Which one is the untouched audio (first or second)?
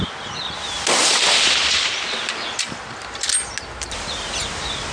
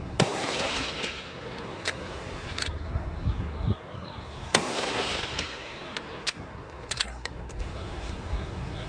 first